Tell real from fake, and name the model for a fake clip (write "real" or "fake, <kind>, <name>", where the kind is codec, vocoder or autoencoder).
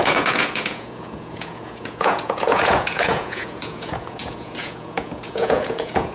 fake, vocoder, Vocos